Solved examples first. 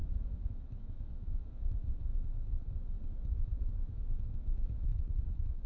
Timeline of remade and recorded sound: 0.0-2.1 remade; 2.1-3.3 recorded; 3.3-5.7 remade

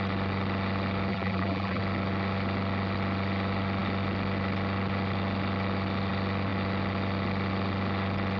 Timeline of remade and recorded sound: 0.0-1.1 recorded; 1.1-1.8 remade; 1.8-8.4 recorded

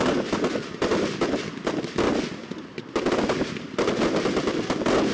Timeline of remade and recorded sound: 0.0-5.1 recorded